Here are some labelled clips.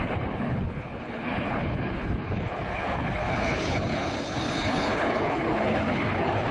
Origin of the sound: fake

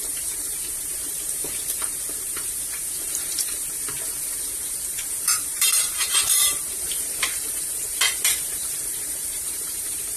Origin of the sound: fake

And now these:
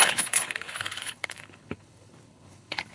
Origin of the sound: fake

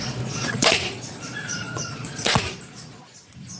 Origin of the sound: fake